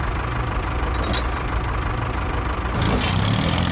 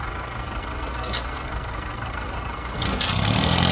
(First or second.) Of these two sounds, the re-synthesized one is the second